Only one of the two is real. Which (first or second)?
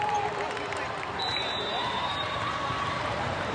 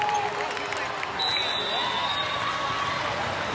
second